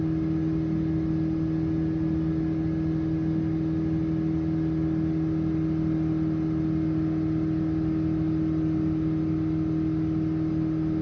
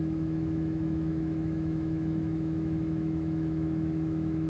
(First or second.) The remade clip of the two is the second